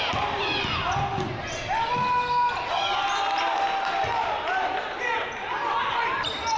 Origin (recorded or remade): recorded